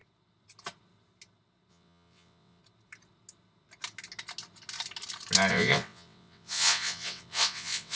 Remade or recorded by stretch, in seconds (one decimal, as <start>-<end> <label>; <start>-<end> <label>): 0.0-1.7 recorded; 1.7-2.6 remade; 2.6-5.5 recorded; 5.5-8.0 remade